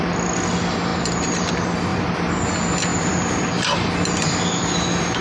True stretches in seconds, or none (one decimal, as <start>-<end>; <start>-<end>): 0.0-1.9; 2.5-2.9; 3.9-5.2